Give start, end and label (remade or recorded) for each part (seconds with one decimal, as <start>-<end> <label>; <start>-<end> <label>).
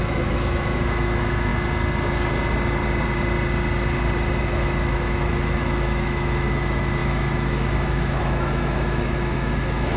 0.0-1.5 remade; 1.5-4.4 recorded; 4.4-10.0 remade